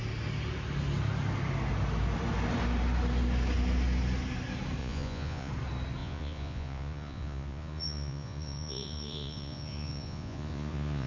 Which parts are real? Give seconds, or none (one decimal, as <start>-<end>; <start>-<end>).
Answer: 0.0-4.8; 5.5-6.0